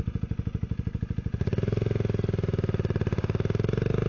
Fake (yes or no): no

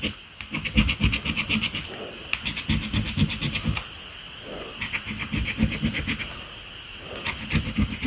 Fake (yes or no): no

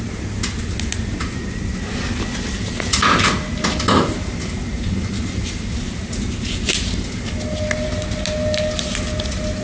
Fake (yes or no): no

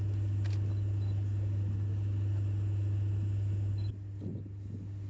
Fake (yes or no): no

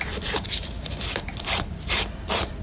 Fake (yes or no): yes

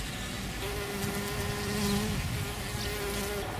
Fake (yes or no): no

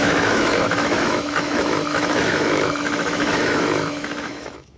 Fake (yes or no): yes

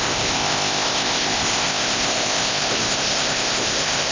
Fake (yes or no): yes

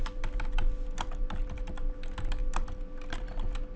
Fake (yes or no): no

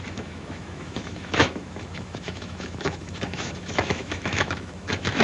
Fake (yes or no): yes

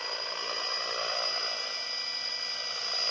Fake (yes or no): no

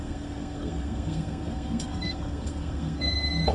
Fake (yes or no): yes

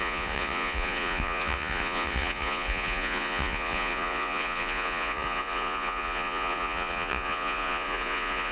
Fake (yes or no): yes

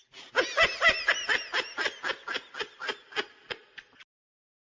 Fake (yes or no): no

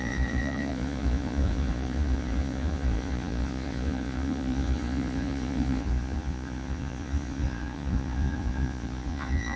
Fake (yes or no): yes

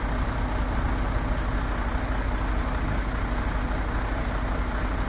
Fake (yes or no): no